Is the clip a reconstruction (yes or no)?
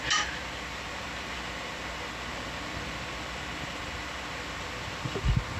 no